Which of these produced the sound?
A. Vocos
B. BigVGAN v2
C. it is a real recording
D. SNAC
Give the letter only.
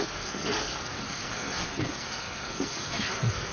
D